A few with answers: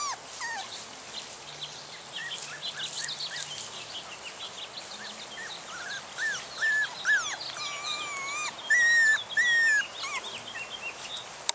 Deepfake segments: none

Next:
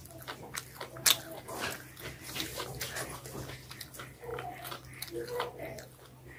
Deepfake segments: 4.3-5.6 (vocoder, BigVGAN v2)